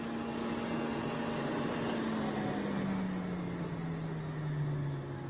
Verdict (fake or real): real